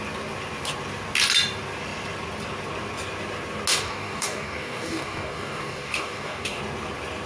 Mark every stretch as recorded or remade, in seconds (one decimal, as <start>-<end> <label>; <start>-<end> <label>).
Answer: 0.0-3.7 recorded; 3.7-6.6 remade; 6.6-7.3 recorded